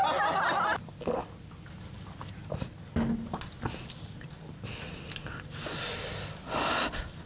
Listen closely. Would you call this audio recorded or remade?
recorded